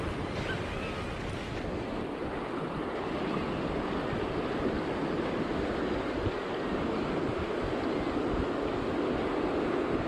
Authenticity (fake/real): real